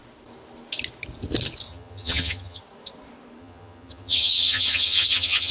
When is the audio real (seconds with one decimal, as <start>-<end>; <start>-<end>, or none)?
0.0-1.7; 2.6-3.4